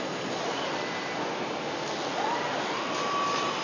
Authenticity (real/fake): real